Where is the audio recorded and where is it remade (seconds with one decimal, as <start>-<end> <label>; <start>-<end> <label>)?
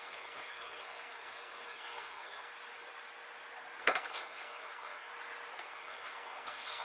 0.0-2.5 remade; 2.5-3.8 recorded; 3.8-5.1 remade; 5.1-5.6 recorded; 5.6-6.8 remade